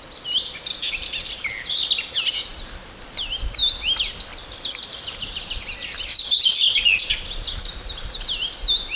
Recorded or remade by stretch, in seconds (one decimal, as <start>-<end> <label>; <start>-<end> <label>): 0.0-9.0 recorded